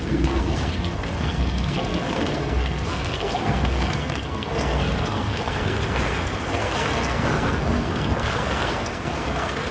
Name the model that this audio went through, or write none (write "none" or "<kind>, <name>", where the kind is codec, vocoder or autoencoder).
codec, SNAC